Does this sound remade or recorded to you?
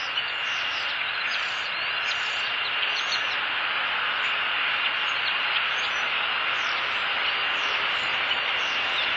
recorded